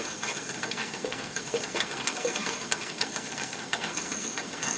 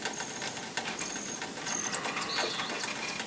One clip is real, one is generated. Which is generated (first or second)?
first